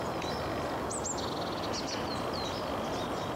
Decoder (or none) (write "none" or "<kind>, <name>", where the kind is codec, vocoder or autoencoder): none